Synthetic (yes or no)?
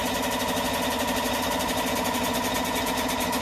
no